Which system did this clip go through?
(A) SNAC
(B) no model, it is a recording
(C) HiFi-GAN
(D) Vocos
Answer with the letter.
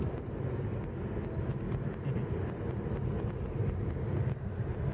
B